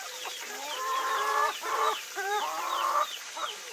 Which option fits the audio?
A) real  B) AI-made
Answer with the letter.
B